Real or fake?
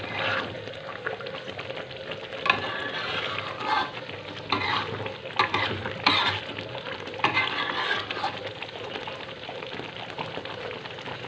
real